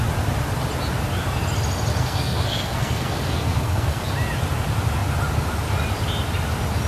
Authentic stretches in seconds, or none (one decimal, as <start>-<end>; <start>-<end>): 0.0-1.9; 4.0-6.9